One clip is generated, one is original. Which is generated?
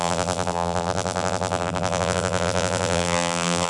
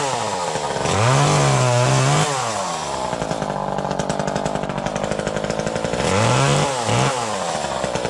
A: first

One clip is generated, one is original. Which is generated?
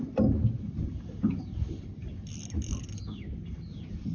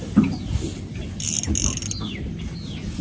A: first